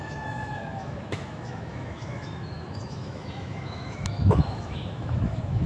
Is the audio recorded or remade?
remade